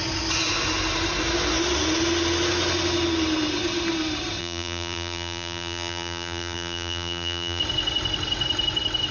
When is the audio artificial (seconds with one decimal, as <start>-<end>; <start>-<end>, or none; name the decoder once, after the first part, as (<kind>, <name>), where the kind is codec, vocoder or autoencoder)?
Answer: 4.4-7.6 (vocoder, BigVGAN v2)